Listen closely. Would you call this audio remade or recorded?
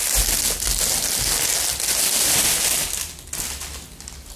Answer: recorded